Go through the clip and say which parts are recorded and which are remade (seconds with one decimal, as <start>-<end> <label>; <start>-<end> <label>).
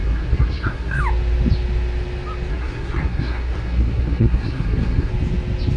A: 0.0-1.0 remade; 1.0-2.5 recorded; 2.5-5.1 remade; 5.1-5.8 recorded